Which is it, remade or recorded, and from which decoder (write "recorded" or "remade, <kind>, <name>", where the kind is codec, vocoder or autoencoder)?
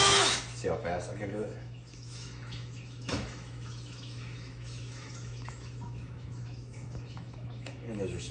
remade, autoencoder, DAC-VAE